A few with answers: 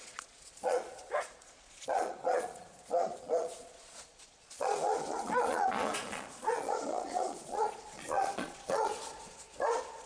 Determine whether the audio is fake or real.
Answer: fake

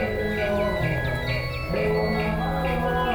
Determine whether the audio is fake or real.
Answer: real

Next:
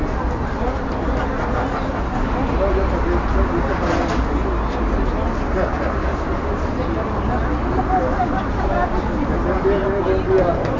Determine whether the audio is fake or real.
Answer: real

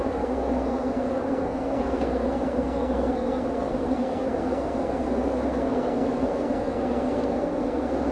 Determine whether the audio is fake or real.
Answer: fake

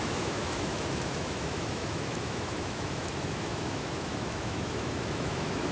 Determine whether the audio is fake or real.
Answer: fake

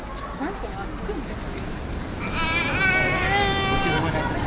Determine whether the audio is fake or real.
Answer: real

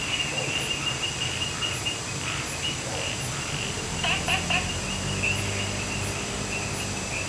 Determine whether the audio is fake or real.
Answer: real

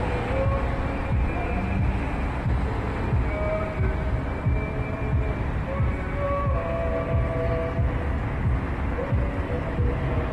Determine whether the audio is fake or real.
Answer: real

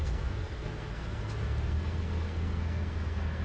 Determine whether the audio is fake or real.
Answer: fake